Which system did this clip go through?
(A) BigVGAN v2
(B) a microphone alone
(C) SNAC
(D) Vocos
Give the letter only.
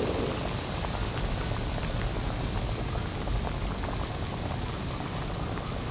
B